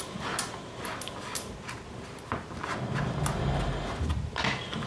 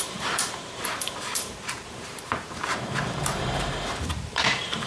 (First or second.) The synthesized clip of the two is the second